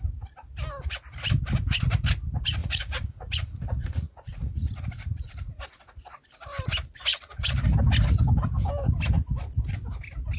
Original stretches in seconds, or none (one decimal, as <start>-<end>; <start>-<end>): 0.0-2.6; 5.8-7.1; 7.6-10.4